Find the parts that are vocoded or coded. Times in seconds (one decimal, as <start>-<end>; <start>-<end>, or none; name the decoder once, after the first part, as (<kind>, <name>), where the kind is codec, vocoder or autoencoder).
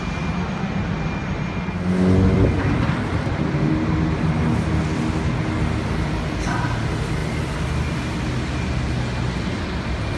none